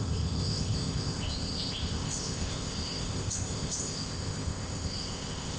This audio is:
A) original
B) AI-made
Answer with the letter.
B